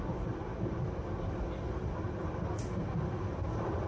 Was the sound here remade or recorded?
recorded